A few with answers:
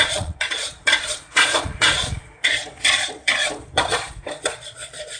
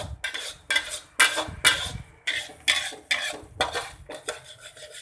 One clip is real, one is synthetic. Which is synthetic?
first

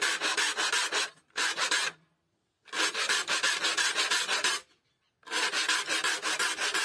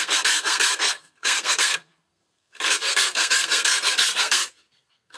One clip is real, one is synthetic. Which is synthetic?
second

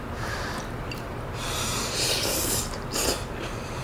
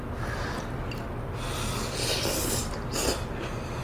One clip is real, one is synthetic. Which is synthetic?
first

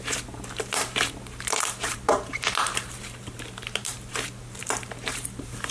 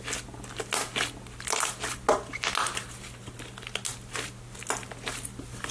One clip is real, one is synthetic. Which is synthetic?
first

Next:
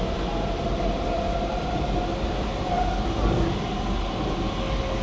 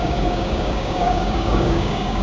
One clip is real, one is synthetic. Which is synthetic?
second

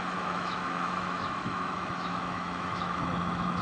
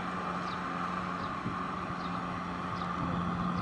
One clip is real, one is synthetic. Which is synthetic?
first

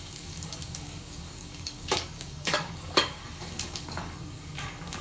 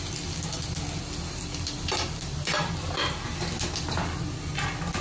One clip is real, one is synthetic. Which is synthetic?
first